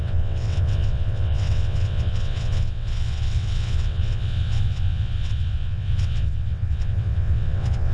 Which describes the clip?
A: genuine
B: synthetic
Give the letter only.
B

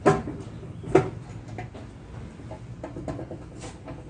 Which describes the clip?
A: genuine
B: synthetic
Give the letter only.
A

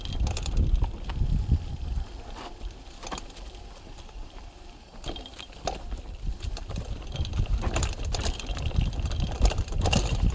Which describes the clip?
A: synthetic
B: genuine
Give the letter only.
A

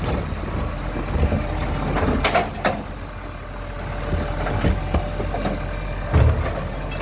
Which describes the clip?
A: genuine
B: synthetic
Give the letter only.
A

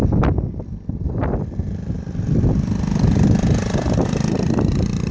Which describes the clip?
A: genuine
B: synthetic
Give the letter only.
A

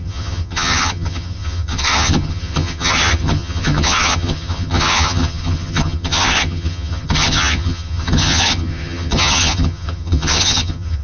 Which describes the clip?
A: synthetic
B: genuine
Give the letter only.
A